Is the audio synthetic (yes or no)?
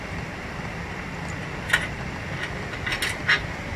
no